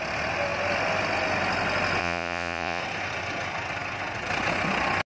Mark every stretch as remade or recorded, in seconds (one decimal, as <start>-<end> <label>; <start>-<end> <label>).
0.0-2.0 recorded; 2.0-2.8 remade; 2.8-5.1 recorded